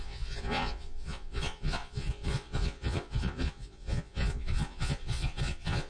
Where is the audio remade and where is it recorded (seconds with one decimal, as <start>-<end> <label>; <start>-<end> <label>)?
0.0-5.9 remade